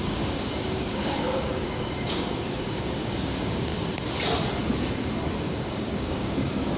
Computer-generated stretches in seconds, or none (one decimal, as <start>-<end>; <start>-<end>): 0.0-3.7; 5.4-6.8